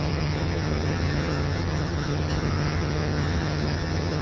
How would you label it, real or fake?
fake